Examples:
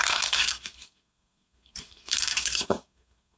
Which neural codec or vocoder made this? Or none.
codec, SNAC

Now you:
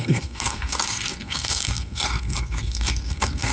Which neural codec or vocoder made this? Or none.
codec, SNAC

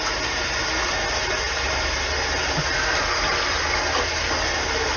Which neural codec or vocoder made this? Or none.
none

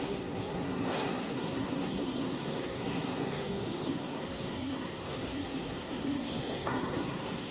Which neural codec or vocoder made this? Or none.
codec, SNAC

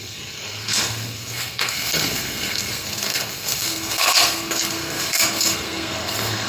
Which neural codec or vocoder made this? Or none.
codec, SNAC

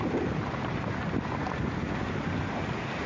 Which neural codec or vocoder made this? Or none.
none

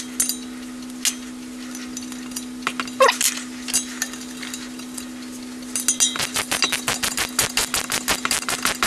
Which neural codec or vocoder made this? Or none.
none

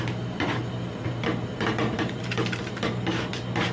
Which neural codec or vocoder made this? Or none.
none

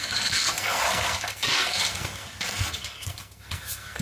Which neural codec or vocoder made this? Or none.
codec, SNAC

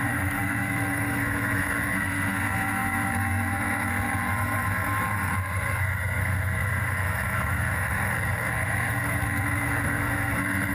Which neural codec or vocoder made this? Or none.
codec, SNAC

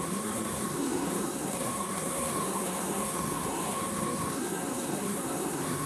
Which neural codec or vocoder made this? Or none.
codec, SNAC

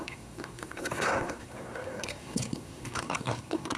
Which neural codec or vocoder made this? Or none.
codec, SNAC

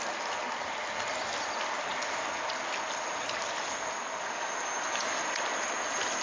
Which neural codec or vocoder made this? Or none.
none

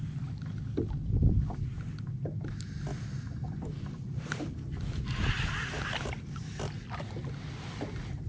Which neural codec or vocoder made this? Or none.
none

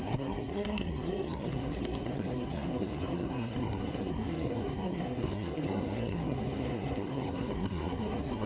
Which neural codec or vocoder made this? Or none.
codec, SNAC